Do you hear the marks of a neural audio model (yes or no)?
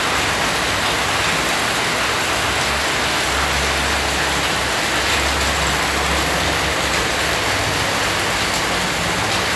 no